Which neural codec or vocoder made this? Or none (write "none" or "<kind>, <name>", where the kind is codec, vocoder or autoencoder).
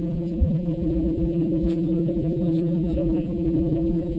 vocoder, BigVGAN v2